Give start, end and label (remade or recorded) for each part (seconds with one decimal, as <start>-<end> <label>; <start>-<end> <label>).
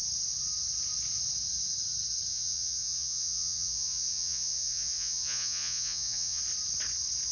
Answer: 0.0-2.3 recorded; 2.3-6.4 remade; 6.4-7.3 recorded